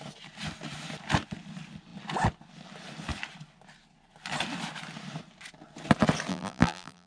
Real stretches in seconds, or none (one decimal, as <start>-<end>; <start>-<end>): 0.0-6.3